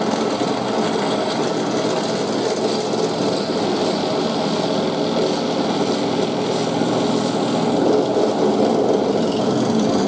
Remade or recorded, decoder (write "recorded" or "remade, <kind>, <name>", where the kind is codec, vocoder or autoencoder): recorded